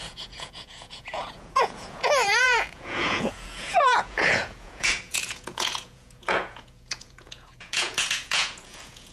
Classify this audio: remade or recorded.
remade